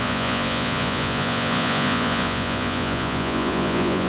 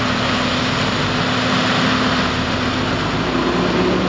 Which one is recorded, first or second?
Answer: second